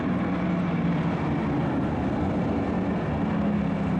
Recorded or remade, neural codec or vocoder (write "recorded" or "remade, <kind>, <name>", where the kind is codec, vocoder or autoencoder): recorded